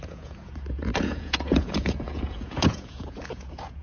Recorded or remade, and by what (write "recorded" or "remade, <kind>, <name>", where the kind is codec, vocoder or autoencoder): remade, vocoder, Vocos